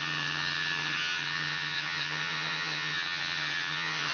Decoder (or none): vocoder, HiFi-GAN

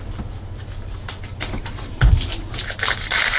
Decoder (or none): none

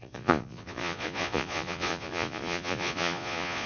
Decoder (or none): vocoder, Vocos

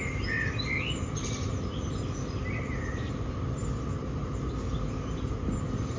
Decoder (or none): none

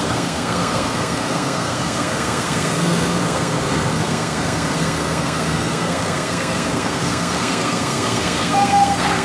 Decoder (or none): codec, SNAC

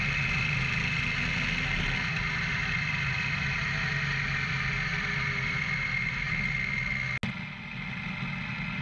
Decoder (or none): none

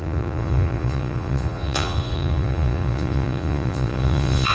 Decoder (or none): vocoder, Vocos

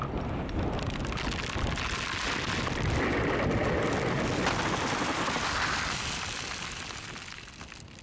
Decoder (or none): none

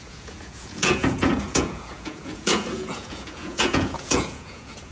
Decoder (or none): vocoder, Vocos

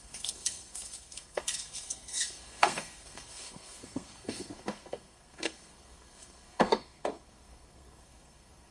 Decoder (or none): codec, SNAC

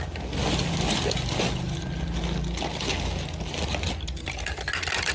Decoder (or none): none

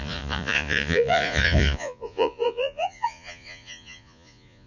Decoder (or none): vocoder, Vocos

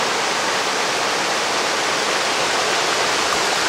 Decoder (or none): none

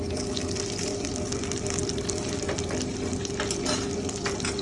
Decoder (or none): none